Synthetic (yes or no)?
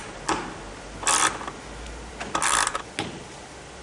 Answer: no